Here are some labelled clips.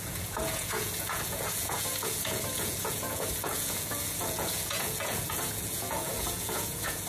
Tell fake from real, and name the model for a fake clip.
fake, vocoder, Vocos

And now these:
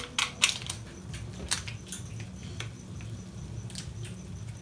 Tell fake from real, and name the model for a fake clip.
real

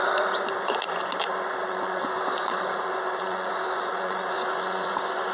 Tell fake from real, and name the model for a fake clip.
fake, vocoder, Vocos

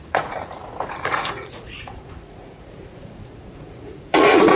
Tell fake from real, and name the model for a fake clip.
fake, vocoder, Vocos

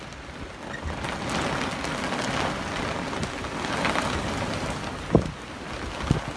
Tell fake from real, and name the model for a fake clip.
real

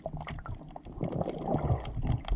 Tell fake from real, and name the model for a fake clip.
real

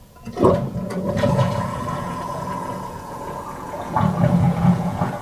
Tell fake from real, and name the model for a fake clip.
fake, vocoder, Vocos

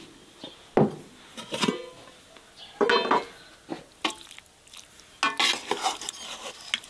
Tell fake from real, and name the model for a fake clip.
real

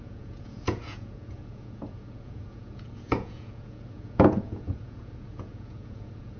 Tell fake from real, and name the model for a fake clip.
fake, vocoder, Vocos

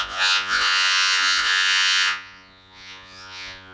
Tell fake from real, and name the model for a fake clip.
fake, vocoder, Vocos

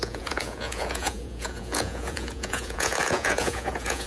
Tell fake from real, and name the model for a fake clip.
fake, vocoder, Vocos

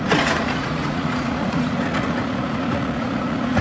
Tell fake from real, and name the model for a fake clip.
fake, vocoder, Vocos